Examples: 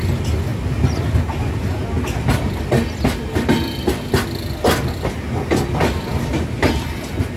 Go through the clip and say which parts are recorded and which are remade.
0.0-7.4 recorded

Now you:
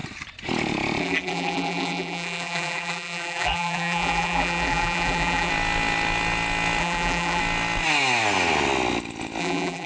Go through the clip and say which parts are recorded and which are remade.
0.0-1.0 recorded; 1.0-5.5 remade; 5.5-6.8 recorded; 6.8-7.4 remade; 7.4-9.4 recorded; 9.4-9.9 remade